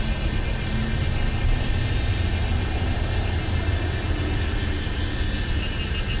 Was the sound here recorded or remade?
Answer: recorded